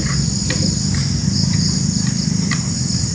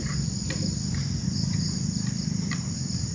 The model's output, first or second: second